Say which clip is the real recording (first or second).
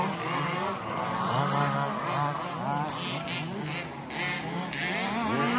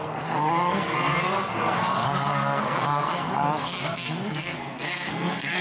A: first